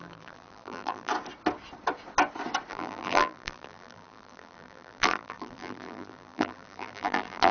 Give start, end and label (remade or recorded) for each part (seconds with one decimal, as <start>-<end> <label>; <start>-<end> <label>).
0.0-1.1 remade; 1.1-2.7 recorded; 2.7-7.5 remade